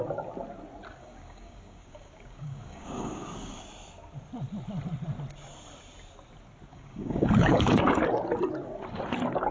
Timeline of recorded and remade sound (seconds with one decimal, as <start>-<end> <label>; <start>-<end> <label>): 0.0-1.0 recorded; 1.0-3.7 remade; 3.7-6.7 recorded; 6.7-8.0 remade; 8.0-9.5 recorded